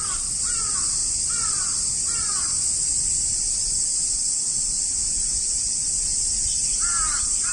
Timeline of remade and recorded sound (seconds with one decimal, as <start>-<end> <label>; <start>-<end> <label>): 0.0-5.0 recorded; 5.0-5.8 remade; 5.8-7.5 recorded

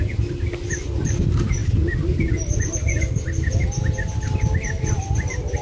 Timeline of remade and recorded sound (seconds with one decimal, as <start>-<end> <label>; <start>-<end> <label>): 0.0-5.6 recorded

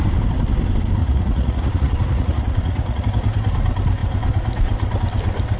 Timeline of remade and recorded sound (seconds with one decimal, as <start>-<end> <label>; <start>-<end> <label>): 0.0-1.0 recorded; 1.0-3.0 remade; 3.0-5.6 recorded

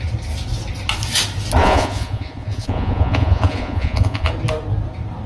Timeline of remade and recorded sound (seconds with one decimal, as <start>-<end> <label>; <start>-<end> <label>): 0.0-1.6 recorded; 1.6-4.3 remade; 4.3-5.3 recorded

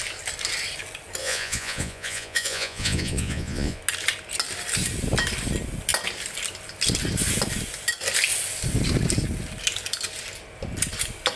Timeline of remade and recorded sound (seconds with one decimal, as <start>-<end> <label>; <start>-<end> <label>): 0.0-1.2 recorded; 1.2-3.8 remade; 3.8-11.4 recorded